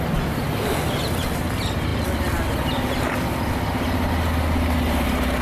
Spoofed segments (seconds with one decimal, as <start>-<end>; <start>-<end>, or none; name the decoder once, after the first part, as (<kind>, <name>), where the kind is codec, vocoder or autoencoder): none